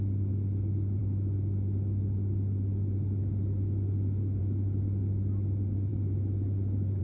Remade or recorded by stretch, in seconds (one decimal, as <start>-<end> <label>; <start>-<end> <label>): 0.0-7.0 recorded